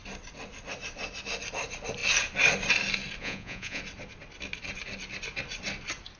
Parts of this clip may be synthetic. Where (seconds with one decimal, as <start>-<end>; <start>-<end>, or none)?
3.2-3.8